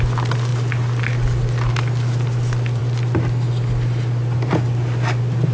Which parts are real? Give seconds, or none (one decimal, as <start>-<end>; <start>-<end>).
0.0-5.5